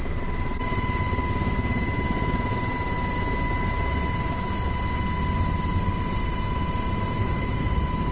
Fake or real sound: real